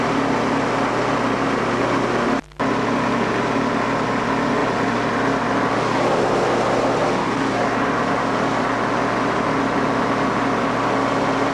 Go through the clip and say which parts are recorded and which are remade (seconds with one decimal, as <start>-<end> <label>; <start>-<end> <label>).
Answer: 0.0-11.5 recorded